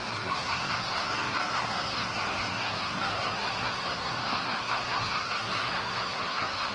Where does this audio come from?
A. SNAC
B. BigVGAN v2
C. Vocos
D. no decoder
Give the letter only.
A